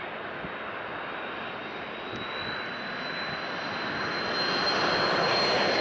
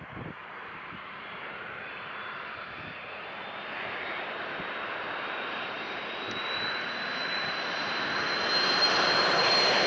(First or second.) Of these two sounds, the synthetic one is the second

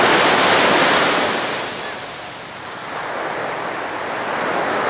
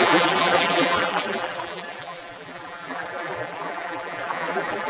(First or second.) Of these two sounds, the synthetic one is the second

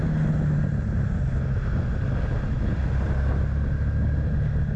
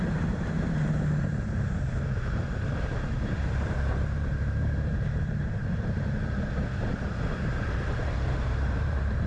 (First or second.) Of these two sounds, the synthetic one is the second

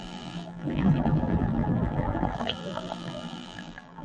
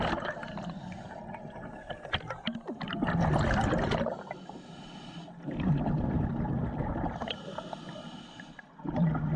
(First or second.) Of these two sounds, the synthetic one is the first